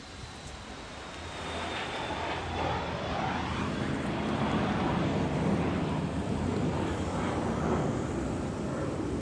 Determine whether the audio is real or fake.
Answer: real